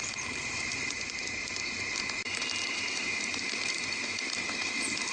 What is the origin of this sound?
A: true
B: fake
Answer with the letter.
A